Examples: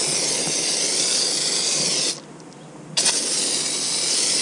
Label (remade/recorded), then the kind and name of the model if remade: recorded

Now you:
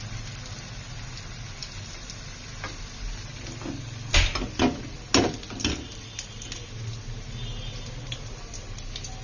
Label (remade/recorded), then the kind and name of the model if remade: recorded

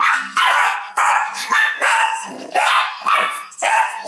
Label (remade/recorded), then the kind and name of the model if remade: remade, codec, SNAC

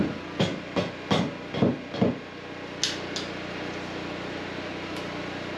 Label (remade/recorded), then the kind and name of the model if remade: recorded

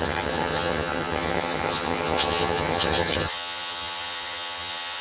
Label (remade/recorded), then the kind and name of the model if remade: remade, vocoder, HiFi-GAN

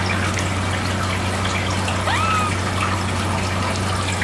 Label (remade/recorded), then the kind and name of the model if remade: recorded